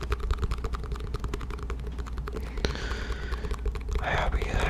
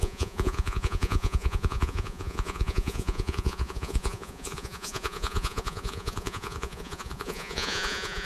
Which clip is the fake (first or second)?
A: second